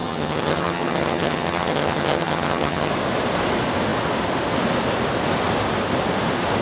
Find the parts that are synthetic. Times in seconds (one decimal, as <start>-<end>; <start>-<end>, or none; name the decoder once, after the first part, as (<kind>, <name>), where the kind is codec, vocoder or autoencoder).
0.0-2.9 (vocoder, HiFi-GAN)